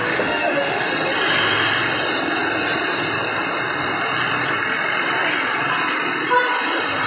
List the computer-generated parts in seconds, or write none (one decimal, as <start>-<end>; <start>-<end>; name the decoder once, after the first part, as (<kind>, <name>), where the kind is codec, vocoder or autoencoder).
0.0-0.9 (autoencoder, DAC-VAE)